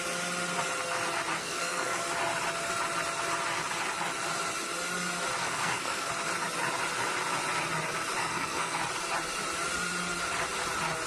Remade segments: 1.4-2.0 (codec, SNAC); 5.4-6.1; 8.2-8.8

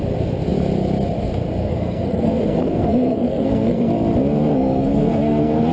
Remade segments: 1.6-3.9 (codec, SNAC); 4.5-5.7